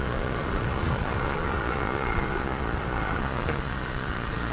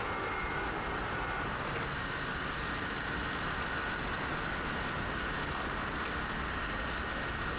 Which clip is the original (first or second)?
second